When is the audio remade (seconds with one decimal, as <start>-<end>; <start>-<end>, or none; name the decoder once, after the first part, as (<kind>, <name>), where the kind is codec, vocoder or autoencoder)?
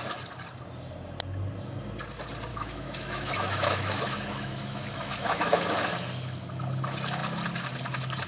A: 2.5-5.9 (autoencoder, DAC-VAE)